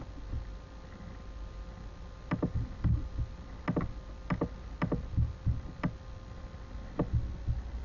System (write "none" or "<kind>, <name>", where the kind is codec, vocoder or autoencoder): none